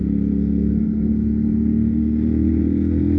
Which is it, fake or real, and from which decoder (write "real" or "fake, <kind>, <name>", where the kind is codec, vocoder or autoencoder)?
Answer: fake, codec, SNAC